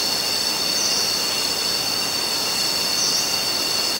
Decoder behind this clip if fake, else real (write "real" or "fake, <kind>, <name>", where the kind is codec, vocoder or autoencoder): real